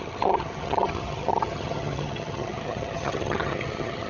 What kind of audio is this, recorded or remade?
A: remade